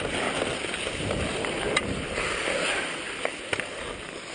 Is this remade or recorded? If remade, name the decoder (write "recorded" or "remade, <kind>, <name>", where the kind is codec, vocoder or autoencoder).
recorded